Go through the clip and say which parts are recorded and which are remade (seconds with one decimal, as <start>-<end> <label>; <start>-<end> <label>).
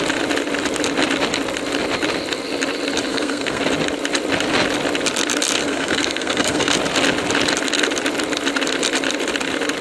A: 0.0-3.1 recorded; 3.1-3.6 remade; 3.6-5.6 recorded; 5.6-6.7 remade; 6.7-9.8 recorded